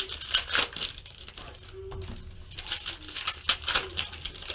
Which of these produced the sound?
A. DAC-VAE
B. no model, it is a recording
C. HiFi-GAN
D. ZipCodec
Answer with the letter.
B